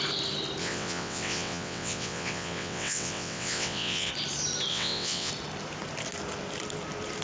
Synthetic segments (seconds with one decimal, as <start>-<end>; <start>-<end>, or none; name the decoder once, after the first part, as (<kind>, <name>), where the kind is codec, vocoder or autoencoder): 0.6-4.1 (vocoder, WaveNeXt); 4.7-5.3